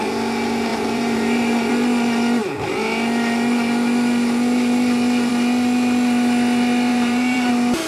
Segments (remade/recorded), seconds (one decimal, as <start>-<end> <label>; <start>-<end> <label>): 0.0-0.7 recorded; 0.7-1.7 remade; 1.7-6.9 recorded; 6.9-7.5 remade; 7.5-7.9 recorded

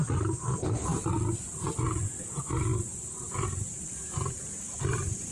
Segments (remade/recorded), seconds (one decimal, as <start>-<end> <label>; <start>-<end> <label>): 0.0-5.3 remade

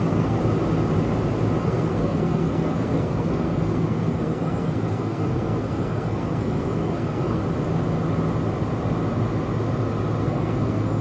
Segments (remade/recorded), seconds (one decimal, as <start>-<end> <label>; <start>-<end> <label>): 0.0-0.4 remade; 0.4-1.6 recorded; 1.6-7.4 remade; 7.4-10.2 recorded; 10.2-11.0 remade

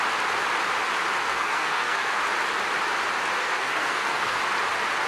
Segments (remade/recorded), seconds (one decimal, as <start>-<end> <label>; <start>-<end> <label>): 0.0-1.2 recorded; 1.2-2.2 remade; 2.2-3.4 recorded; 3.4-4.4 remade; 4.4-5.1 recorded

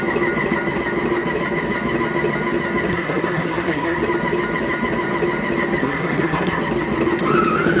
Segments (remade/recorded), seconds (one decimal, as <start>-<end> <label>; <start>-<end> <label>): 0.0-2.9 recorded; 2.9-4.0 remade; 4.0-5.8 recorded; 5.8-6.6 remade; 6.6-7.8 recorded

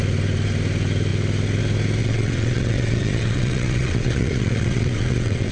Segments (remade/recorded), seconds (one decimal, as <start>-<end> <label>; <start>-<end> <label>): 0.0-2.0 recorded; 2.0-5.5 remade